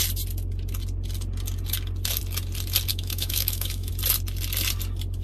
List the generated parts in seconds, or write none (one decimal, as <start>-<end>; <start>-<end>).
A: 2.9-3.9